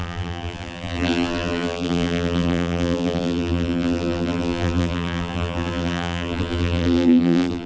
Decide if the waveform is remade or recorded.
remade